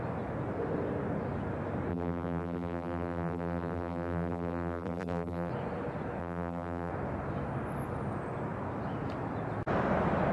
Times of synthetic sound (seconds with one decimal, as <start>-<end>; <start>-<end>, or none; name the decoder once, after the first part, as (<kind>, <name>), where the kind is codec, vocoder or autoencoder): 1.9-5.5 (vocoder, BigVGAN v2); 6.2-6.9